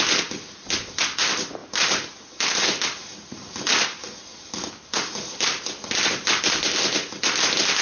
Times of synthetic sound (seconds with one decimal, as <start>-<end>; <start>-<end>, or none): none